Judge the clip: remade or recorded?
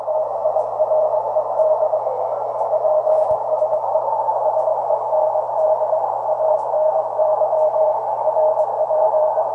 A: remade